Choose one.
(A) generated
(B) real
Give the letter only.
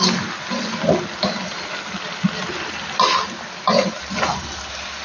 B